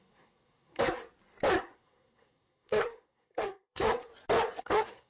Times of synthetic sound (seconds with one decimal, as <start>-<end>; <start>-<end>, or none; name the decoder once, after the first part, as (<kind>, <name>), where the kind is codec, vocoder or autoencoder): 0.0-1.0 (codec, SNAC); 1.6-4.1; 4.6-5.1